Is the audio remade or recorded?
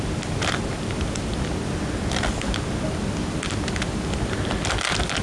recorded